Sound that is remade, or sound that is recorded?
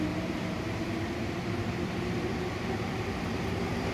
remade